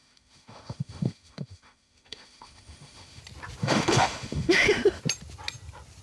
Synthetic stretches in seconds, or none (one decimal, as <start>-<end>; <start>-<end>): 0.0-3.2; 3.6-5.0